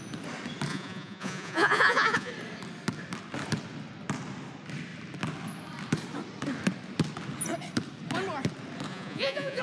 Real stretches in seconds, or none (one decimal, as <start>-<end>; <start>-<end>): 0.0-0.7; 2.3-8.9